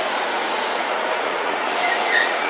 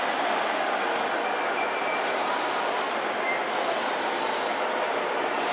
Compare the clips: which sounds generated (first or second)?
first